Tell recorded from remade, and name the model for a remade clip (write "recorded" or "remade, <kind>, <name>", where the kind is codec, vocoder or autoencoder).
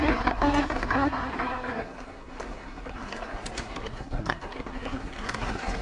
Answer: remade, codec, SNAC